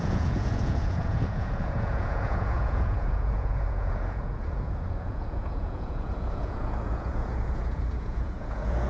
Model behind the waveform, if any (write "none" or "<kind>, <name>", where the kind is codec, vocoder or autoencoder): vocoder, Vocos